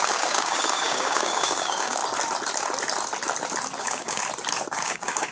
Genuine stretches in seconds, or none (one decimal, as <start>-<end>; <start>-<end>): 2.0-3.8; 4.2-4.7